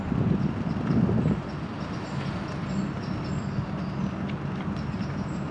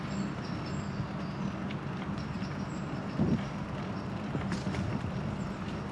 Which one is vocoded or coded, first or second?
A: first